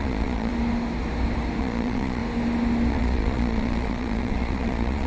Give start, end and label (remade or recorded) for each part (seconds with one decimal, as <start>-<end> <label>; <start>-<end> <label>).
0.0-0.5 remade; 0.5-1.6 recorded; 1.6-2.2 remade; 2.2-2.9 recorded; 2.9-5.1 remade